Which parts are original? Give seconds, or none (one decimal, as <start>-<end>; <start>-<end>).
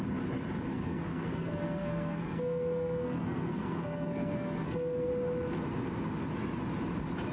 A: 0.0-0.7; 5.1-7.3